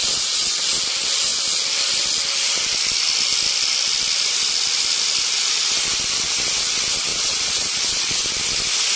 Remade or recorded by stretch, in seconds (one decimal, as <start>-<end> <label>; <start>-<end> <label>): 0.0-0.6 remade; 0.6-7.1 recorded; 7.1-8.2 remade; 8.2-9.0 recorded